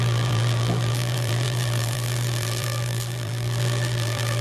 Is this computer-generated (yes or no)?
yes